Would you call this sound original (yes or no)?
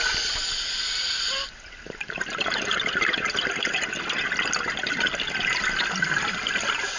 yes